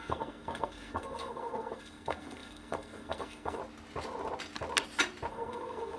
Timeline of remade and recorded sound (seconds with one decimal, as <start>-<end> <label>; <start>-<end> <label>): 0.0-3.6 remade; 3.6-5.3 recorded; 5.3-6.0 remade